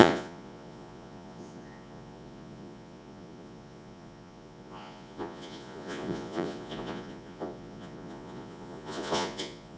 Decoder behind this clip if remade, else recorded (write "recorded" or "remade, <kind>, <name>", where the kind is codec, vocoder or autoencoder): remade, vocoder, Vocos